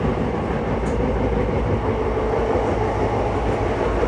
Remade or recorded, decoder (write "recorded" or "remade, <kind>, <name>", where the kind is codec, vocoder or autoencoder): recorded